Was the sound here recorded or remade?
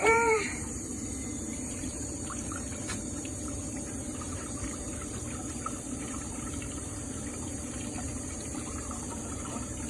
remade